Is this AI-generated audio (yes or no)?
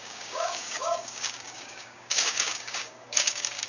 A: yes